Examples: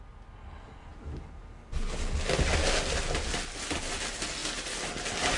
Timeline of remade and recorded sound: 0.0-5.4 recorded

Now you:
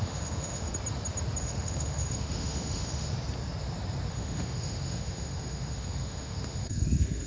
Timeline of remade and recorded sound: 0.0-0.7 remade; 0.7-1.4 recorded; 1.4-3.1 remade; 3.1-4.1 recorded; 4.1-7.3 remade

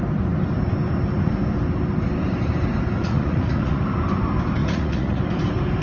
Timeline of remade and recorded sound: 0.0-3.0 recorded; 3.0-3.8 remade; 3.8-4.6 recorded; 4.6-5.2 remade; 5.2-5.8 recorded

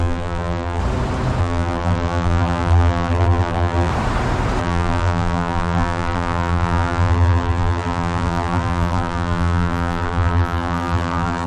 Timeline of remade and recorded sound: 0.0-0.8 remade; 0.8-1.4 recorded; 1.4-3.9 remade; 3.9-4.6 recorded; 4.6-11.5 remade

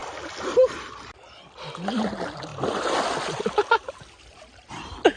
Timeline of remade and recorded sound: 0.0-5.2 recorded